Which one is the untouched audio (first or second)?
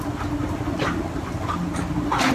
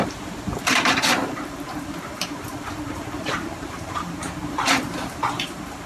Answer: first